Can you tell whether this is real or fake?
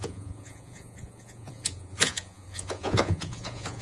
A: fake